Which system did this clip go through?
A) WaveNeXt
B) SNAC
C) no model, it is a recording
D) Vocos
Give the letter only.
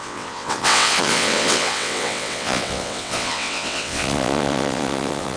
A